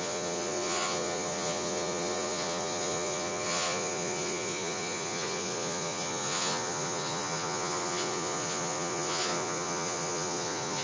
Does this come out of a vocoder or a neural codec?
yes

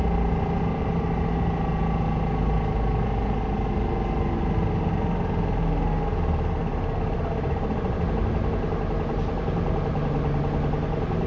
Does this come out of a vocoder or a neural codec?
no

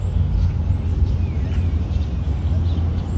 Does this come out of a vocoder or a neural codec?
no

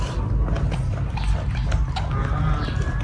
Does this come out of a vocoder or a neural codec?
no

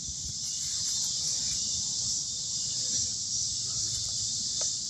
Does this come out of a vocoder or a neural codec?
yes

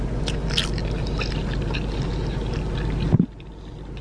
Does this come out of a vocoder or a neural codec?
no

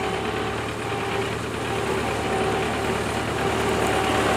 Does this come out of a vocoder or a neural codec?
no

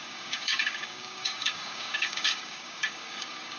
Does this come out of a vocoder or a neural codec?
yes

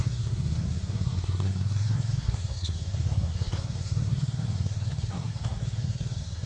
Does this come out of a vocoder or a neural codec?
yes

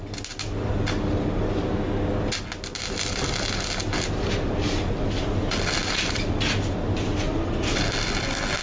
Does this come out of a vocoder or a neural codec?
no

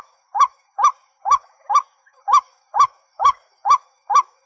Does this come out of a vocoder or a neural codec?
yes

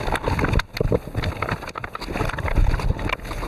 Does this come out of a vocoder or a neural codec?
no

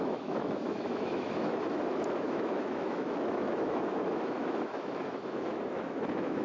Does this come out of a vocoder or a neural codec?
yes